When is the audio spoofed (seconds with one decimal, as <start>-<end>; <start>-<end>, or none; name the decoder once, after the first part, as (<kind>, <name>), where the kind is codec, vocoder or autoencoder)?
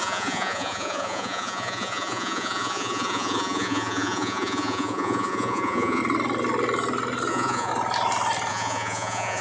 0.0-6.0 (vocoder, Vocos); 7.3-7.7; 8.5-9.4